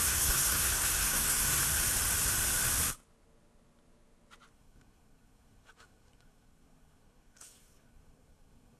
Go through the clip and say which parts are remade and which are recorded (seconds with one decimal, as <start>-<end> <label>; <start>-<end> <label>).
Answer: 0.0-1.6 remade; 1.6-4.5 recorded; 4.5-8.8 remade